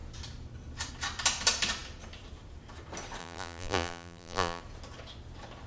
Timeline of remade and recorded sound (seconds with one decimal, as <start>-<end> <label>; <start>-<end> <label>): 0.0-3.2 recorded; 3.2-4.6 remade; 4.6-5.7 recorded